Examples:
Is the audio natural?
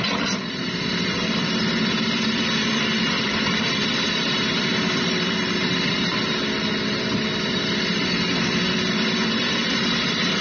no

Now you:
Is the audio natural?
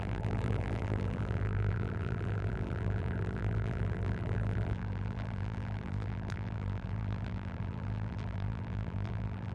no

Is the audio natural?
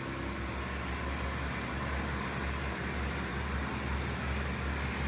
yes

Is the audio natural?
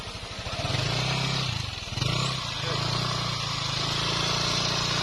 yes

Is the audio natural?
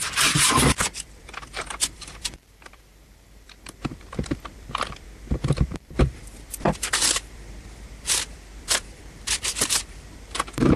no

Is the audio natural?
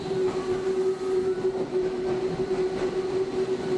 yes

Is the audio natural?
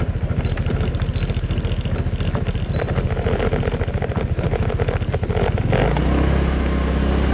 yes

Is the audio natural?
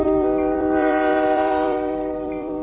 no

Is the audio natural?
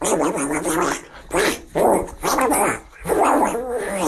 yes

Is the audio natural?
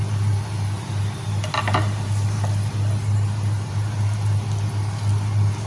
yes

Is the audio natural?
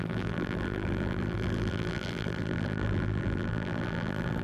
no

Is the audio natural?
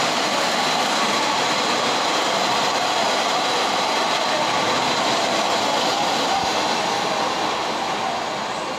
yes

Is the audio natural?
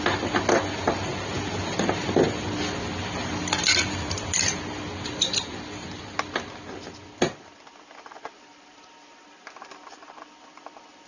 yes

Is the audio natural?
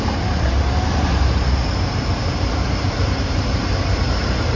no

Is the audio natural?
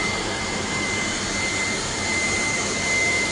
no